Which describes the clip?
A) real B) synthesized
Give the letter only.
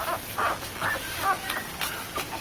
A